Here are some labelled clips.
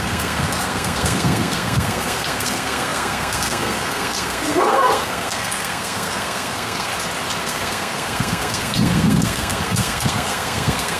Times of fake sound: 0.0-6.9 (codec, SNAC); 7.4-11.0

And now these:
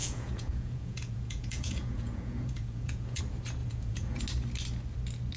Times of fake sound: 0.0-3.2 (vocoder, Vocos); 3.6-4.2

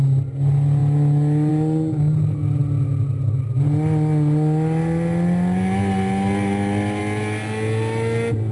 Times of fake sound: none

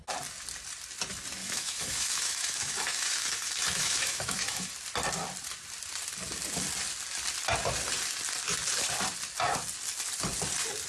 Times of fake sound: 1.4-4.7 (autoencoder, DAC-VAE)

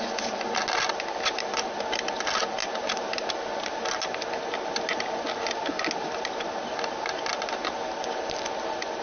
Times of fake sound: none